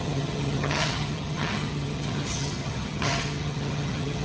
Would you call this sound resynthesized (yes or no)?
yes